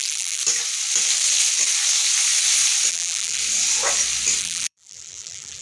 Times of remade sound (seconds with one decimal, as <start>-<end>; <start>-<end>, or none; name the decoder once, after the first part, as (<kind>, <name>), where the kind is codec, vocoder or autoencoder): 0.0-0.4 (vocoder, BigVGAN v2); 2.9-3.4; 4.4-5.6